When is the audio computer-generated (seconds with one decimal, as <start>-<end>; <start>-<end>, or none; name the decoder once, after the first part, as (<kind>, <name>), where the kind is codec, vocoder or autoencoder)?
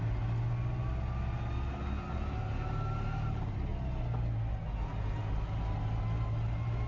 none